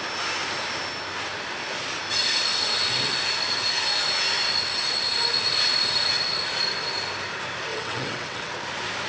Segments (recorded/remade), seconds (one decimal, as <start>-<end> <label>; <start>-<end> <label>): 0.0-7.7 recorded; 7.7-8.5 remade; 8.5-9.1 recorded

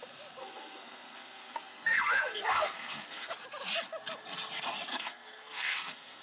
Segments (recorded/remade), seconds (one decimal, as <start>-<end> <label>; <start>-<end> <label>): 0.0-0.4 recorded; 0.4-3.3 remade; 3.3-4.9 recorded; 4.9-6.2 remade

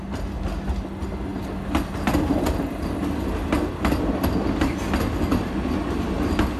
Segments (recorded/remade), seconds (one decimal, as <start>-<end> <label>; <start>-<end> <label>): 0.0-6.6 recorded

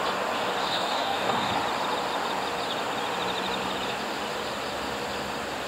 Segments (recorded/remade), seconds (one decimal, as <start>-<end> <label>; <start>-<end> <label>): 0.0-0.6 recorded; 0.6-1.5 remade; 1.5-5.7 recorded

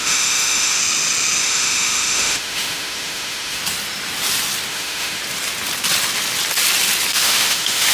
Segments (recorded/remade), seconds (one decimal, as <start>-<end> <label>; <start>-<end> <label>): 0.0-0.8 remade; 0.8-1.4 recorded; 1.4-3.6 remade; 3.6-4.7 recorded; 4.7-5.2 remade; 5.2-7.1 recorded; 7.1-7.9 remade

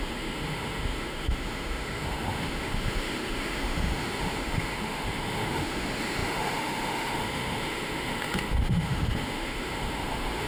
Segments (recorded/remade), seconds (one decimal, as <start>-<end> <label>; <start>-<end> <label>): 0.0-10.5 remade

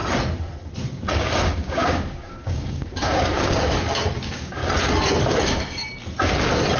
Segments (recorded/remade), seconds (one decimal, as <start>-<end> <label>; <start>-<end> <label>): 0.0-1.1 recorded; 1.1-4.6 remade; 4.6-6.8 recorded